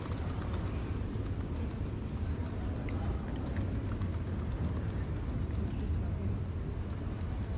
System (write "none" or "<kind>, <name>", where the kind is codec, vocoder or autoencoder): none